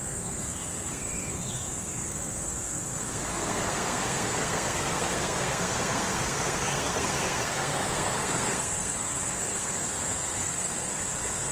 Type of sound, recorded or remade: remade